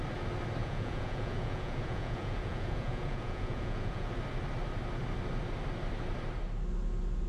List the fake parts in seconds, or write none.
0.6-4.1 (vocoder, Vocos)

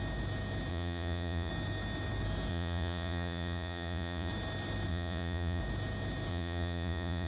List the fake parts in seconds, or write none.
0.7-1.5 (vocoder, Vocos); 2.5-4.3; 4.9-5.6; 6.3-7.3

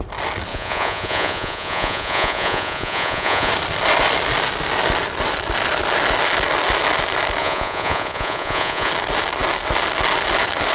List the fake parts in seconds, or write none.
0.5-3.5 (vocoder, Vocos); 7.4-8.9

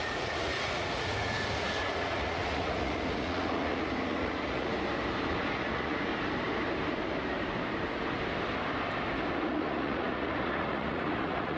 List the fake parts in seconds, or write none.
0.0-4.7 (vocoder, Vocos); 5.3-6.1; 9.4-11.6

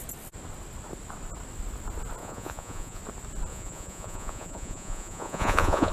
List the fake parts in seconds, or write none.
2.2-3.0 (vocoder, Vocos); 3.5-5.9

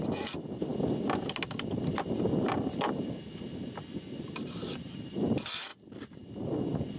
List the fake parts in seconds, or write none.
none

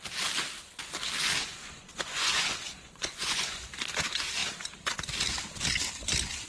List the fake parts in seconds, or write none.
1.4-3.7 (vocoder, Vocos)

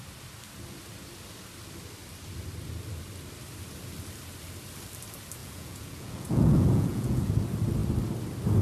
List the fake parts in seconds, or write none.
5.4-7.3 (vocoder, Vocos)